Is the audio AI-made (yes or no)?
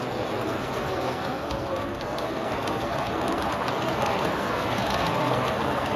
yes